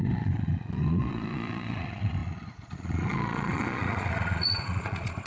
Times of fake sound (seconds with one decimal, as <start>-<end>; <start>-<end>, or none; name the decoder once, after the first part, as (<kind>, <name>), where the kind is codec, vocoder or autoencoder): 0.0-5.3 (vocoder, Vocos)